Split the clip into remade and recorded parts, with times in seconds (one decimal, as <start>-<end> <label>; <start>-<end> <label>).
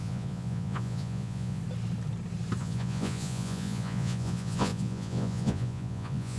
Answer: 0.0-1.6 remade; 1.6-2.6 recorded; 2.6-6.4 remade